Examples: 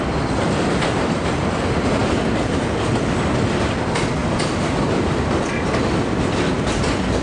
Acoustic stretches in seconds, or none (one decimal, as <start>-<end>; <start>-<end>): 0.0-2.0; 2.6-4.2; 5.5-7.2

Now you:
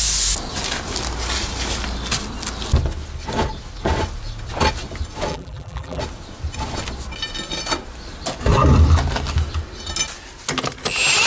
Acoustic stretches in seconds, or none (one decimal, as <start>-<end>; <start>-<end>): 0.0-5.3; 6.0-11.3

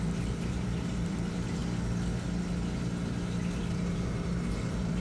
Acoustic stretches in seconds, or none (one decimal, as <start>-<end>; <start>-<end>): 1.6-3.7

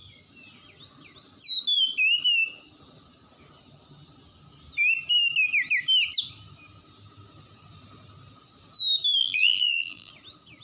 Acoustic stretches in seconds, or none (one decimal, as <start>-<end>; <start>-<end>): 0.0-9.2; 10.1-10.6